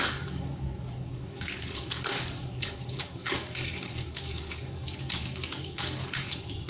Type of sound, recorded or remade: remade